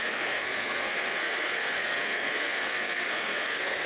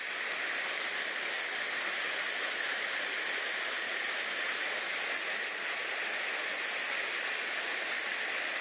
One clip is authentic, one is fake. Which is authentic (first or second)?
second